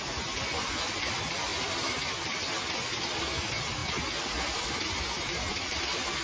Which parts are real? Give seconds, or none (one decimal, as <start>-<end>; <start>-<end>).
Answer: 3.8-4.6

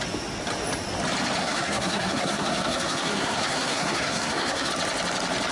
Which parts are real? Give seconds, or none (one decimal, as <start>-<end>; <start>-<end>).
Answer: 0.0-1.4; 4.7-5.5

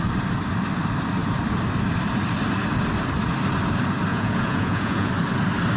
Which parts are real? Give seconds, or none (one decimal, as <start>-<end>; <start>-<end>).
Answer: 0.0-4.1; 5.1-5.8

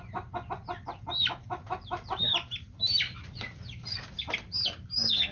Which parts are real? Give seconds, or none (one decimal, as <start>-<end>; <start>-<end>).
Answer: 0.0-1.6; 3.0-5.3